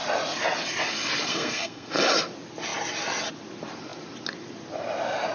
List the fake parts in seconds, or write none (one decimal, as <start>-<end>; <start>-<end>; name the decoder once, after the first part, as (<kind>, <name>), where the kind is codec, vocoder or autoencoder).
1.3-1.9 (codec, SNAC)